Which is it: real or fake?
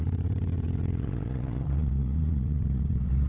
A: fake